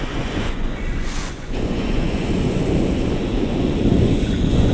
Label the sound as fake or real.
fake